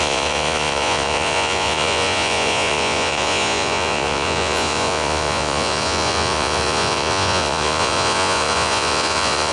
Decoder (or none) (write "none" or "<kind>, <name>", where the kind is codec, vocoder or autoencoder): vocoder, Vocos